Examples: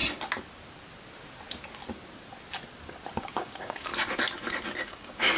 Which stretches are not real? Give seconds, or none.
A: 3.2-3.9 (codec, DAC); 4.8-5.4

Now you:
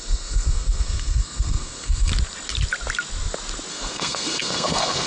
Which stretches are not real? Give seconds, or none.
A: 0.0-2.1 (codec, SNAC); 3.7-5.1

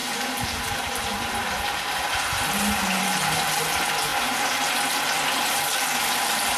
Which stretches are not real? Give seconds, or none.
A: 4.1-5.0 (vocoder, BigVGAN v2)

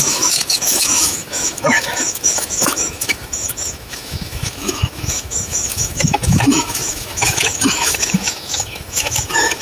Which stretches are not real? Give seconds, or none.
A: 0.0-9.6 (autoencoder, DAC-VAE)

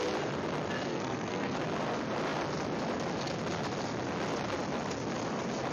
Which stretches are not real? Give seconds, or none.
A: 0.9-1.6 (codec, SNAC)

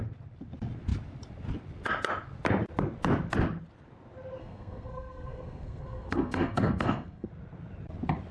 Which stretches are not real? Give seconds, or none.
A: 4.4-7.3 (codec, SNAC)

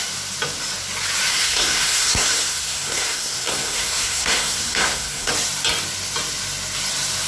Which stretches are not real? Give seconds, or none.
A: 1.3-5.3 (codec, SNAC)

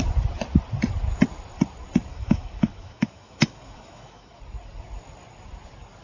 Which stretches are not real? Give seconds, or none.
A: 2.1-4.4 (autoencoder, DAC-VAE)